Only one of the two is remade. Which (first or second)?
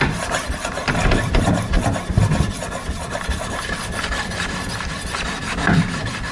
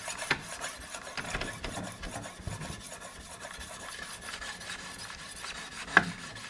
first